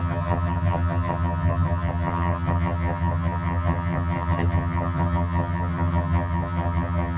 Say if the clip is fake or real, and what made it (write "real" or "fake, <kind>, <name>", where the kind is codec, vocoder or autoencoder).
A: fake, vocoder, HiFi-GAN